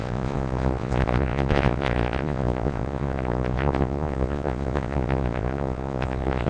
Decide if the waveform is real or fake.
fake